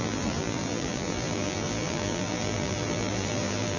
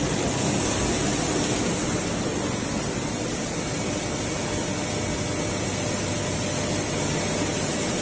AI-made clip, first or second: first